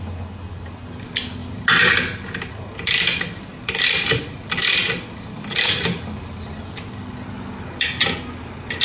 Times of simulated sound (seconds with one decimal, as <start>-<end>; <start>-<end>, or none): none